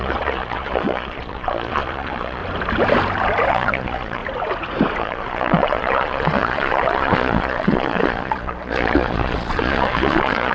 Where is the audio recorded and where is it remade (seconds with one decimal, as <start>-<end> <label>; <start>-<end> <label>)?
0.0-2.4 remade; 2.4-3.5 recorded; 3.5-4.2 remade; 4.2-5.0 recorded; 5.0-10.5 remade